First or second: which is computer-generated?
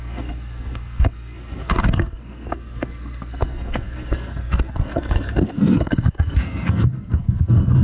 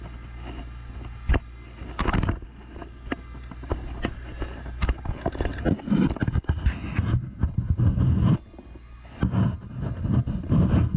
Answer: first